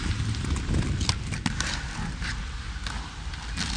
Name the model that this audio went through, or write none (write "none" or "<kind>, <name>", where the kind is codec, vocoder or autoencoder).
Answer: none